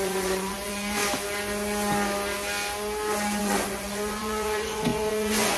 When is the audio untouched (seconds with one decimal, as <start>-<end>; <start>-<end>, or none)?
1.0-3.4